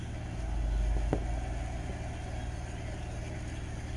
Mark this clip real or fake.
real